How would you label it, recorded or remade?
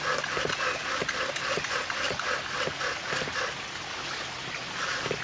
recorded